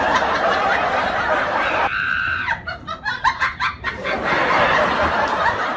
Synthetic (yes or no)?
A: yes